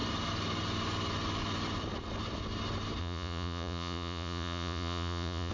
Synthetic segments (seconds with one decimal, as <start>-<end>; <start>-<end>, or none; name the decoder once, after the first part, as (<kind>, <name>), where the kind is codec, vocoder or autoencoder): 3.0-5.5 (vocoder, Vocos)